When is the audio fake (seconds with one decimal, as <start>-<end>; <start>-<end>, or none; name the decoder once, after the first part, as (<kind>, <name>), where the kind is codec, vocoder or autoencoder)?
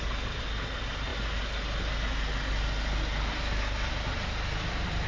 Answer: none